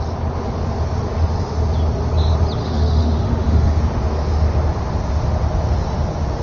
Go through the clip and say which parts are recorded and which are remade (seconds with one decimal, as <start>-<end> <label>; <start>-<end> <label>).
0.0-2.6 recorded; 2.6-3.8 remade; 3.8-6.4 recorded